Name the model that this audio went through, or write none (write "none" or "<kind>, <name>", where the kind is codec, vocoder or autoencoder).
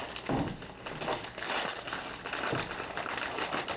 none